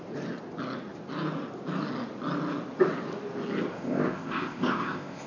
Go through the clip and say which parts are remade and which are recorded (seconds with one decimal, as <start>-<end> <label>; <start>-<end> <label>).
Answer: 0.0-3.7 recorded; 3.7-5.3 remade